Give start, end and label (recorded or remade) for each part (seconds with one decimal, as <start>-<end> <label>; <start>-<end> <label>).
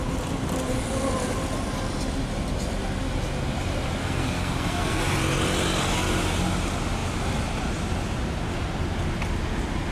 0.0-4.0 recorded; 4.0-5.0 remade; 5.0-9.9 recorded